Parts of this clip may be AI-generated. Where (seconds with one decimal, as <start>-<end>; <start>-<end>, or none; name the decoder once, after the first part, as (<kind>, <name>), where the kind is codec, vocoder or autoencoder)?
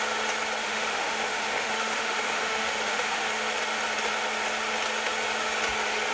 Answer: 0.6-3.3 (autoencoder, DAC-VAE)